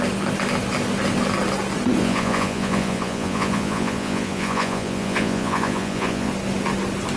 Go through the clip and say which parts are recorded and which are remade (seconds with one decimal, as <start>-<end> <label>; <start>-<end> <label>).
0.0-2.0 recorded; 2.0-6.3 remade; 6.3-7.2 recorded